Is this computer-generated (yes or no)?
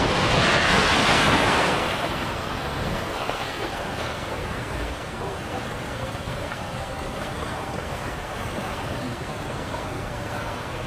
yes